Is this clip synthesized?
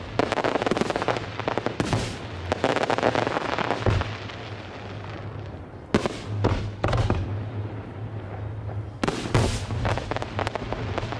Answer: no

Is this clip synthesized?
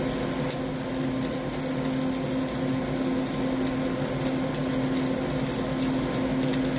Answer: no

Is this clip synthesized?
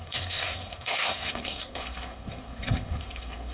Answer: yes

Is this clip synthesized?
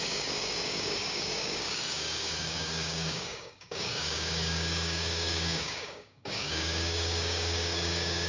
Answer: yes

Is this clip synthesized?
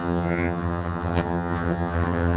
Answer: yes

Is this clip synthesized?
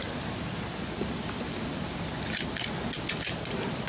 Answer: no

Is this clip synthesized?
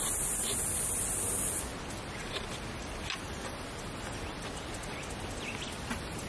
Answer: no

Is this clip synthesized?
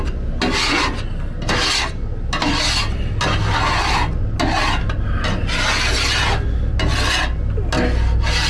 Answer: no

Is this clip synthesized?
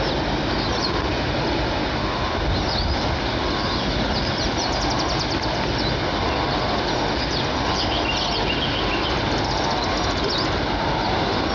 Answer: no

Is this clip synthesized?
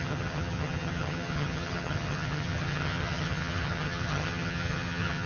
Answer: yes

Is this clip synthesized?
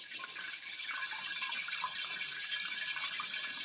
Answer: yes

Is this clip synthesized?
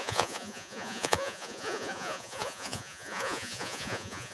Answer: yes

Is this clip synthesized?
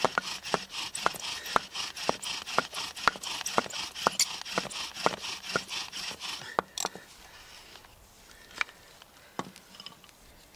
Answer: no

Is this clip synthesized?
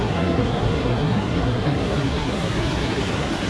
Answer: yes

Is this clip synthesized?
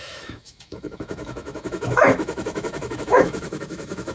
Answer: yes